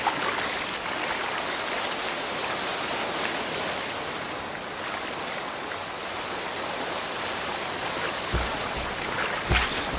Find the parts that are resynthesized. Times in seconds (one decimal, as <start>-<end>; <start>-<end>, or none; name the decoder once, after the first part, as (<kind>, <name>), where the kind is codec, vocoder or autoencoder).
none